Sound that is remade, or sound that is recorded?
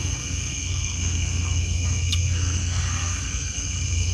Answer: remade